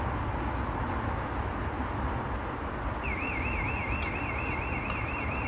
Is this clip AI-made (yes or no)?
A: no